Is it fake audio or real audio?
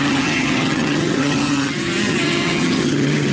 fake